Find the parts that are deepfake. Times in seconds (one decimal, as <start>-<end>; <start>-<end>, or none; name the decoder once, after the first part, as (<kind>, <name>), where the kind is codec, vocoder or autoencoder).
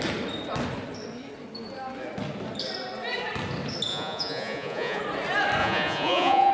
3.9-5.0 (vocoder, Vocos); 5.6-6.5